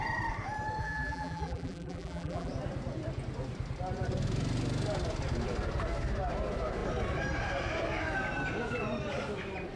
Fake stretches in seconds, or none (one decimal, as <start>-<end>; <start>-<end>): 0.8-2.5